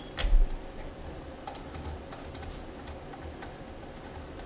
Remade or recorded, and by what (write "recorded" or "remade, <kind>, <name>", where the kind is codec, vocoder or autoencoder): recorded